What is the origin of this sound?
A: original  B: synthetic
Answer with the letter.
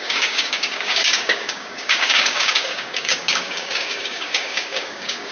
B